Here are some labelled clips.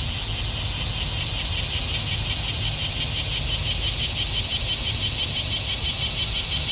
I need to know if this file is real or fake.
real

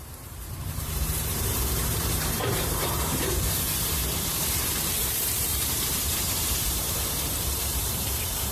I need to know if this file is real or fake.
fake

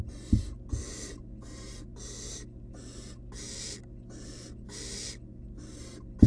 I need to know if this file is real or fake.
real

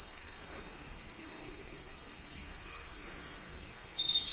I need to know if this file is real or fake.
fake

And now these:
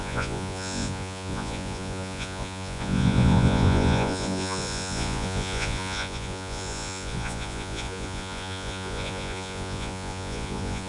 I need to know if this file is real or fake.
fake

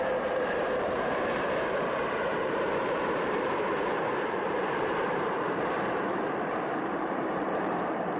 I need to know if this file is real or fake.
fake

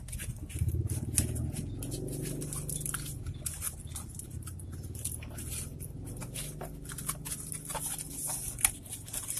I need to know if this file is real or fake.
real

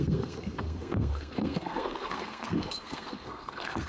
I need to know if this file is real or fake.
fake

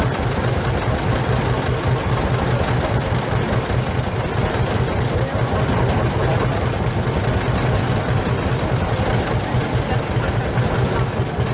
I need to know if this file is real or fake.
real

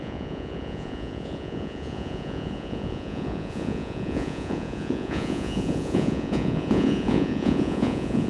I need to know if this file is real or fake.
fake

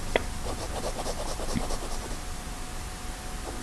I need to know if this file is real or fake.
real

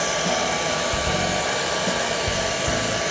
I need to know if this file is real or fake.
real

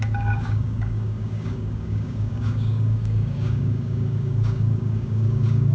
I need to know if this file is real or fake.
fake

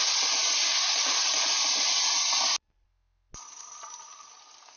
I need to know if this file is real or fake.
real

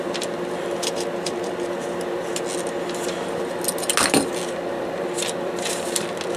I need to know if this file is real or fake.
real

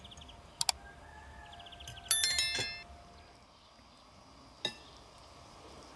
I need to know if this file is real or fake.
real